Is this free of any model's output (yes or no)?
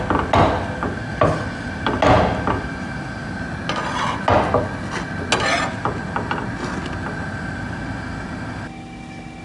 yes